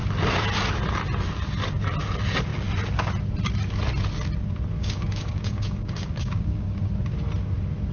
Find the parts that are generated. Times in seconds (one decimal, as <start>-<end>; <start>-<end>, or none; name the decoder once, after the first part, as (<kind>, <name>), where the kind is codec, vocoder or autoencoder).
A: 4.8-6.9 (codec, DAC)